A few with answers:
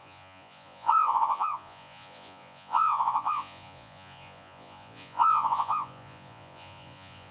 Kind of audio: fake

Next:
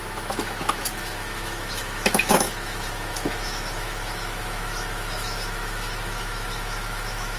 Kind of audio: fake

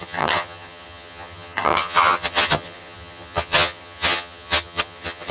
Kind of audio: fake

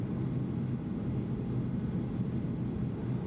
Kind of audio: real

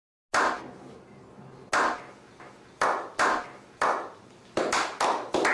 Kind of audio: real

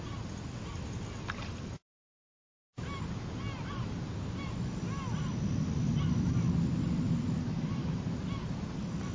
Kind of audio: real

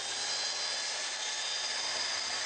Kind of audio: real